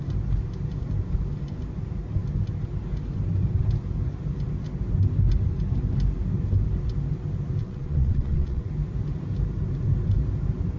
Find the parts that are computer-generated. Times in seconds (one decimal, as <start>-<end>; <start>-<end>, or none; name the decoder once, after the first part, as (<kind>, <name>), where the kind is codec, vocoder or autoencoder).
7.6-8.7 (vocoder, WaveNeXt)